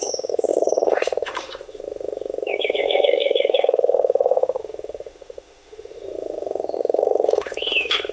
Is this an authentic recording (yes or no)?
no